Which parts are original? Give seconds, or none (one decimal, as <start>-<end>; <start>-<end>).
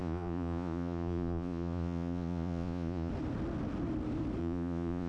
3.1-4.4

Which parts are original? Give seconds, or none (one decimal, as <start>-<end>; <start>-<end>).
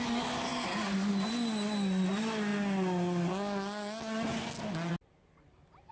0.0-5.9